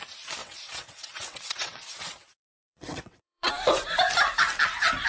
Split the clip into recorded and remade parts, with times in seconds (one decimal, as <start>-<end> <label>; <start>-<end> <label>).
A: 0.0-0.4 recorded; 0.4-3.5 remade; 3.5-5.1 recorded